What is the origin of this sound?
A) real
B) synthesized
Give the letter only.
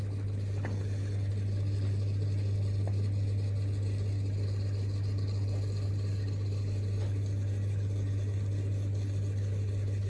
A